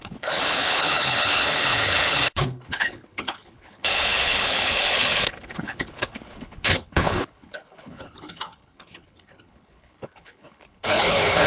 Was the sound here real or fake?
fake